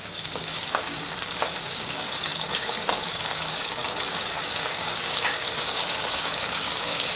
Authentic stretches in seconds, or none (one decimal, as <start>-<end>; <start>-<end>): none